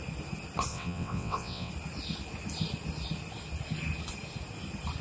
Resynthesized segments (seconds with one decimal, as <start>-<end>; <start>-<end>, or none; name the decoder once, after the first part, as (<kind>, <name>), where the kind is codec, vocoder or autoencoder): 0.7-1.7 (vocoder, WaveNeXt)